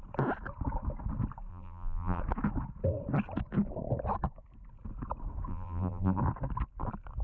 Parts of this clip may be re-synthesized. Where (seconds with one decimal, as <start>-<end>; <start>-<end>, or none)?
1.5-2.2; 5.5-6.2

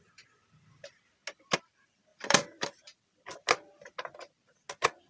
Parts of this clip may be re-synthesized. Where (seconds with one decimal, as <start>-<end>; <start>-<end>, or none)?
2.1-4.3

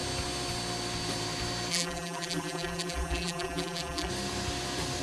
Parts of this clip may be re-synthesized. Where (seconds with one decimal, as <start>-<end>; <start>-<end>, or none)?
1.7-4.1

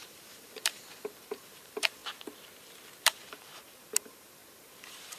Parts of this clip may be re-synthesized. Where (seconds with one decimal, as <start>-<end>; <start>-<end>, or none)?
0.0-2.0; 3.0-5.2

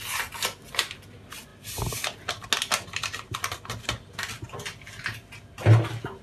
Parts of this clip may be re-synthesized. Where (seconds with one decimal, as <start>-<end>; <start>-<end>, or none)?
none

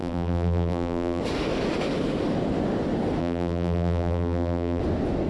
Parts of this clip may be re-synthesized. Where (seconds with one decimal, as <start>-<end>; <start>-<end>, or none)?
0.0-1.2; 3.2-4.8